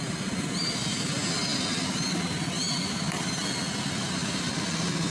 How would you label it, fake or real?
real